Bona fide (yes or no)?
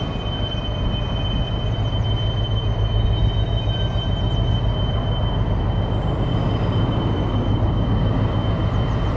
yes